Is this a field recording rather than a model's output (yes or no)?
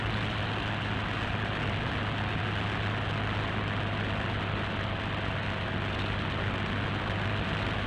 yes